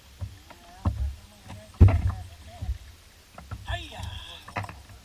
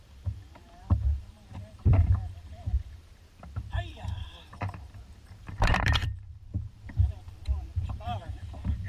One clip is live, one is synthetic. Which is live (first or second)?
first